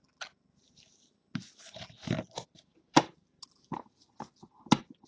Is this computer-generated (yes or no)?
no